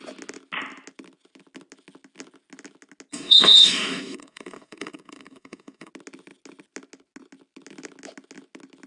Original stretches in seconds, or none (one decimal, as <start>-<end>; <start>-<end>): 0.0-3.1; 5.9-8.9